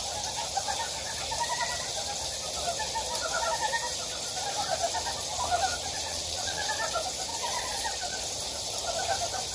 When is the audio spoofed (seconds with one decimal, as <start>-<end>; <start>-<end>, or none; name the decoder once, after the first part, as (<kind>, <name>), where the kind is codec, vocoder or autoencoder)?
6.1-6.7 (vocoder, Vocos); 7.3-8.2